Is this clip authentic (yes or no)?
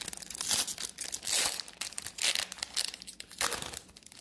yes